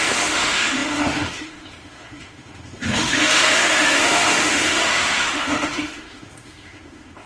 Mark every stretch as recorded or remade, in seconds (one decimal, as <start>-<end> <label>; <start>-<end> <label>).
0.0-7.3 remade